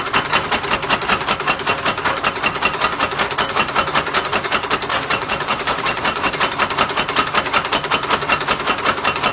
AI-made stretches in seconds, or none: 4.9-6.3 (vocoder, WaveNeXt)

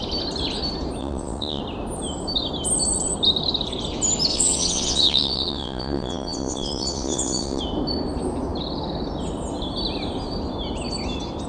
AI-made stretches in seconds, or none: 1.0-1.6 (vocoder, WaveNeXt); 4.3-7.6

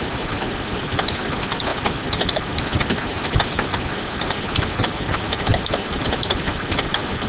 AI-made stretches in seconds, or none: none

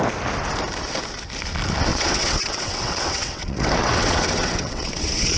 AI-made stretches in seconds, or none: 1.9-5.4 (vocoder, WaveNeXt)